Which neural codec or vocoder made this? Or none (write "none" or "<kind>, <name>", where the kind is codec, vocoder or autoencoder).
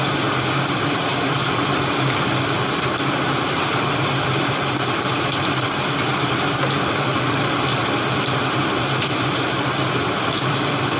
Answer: none